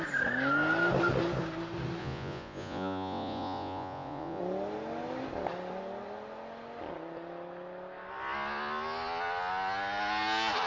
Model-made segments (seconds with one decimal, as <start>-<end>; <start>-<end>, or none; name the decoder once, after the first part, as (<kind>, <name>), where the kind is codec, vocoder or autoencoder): 2.0-4.4 (vocoder, Vocos)